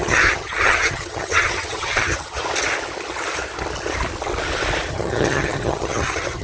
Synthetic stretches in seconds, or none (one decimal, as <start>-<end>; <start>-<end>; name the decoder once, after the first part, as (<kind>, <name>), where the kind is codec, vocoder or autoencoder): 0.0-2.4 (vocoder, HiFi-GAN); 4.9-6.4